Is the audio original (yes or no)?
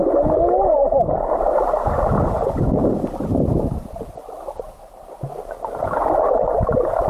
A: yes